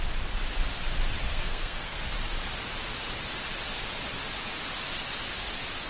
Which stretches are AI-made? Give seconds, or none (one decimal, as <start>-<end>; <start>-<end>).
1.2-2.0